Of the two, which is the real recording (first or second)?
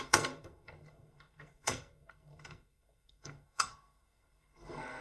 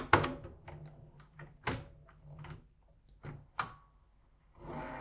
second